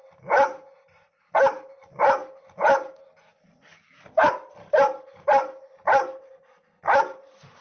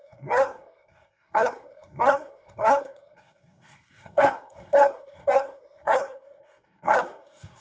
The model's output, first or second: second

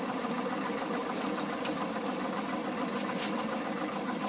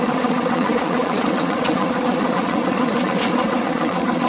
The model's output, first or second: second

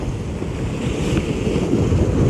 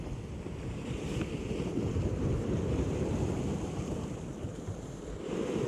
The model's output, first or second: second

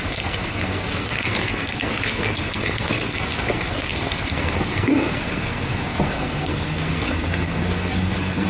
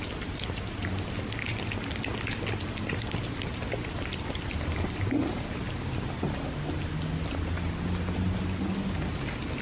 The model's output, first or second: first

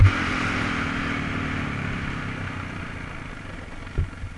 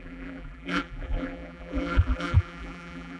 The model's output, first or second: second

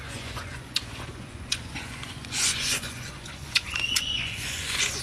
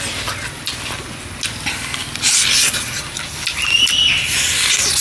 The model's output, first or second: first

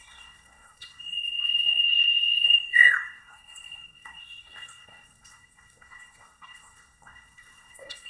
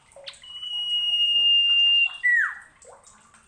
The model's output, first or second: first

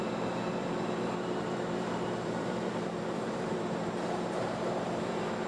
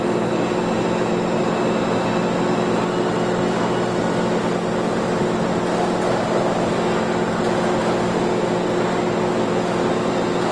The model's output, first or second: first